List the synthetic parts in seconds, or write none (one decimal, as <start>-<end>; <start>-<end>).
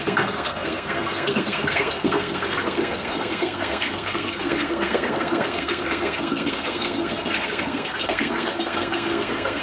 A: 0.0-9.6